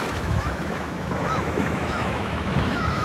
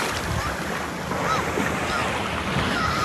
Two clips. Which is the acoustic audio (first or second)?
second